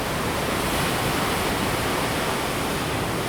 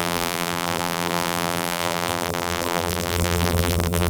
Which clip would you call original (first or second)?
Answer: first